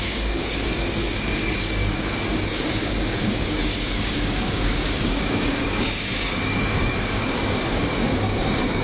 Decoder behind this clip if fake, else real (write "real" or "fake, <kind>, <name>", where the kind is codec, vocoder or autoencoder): fake, codec, DAC